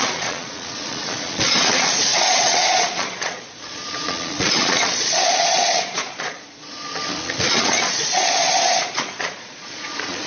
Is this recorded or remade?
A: remade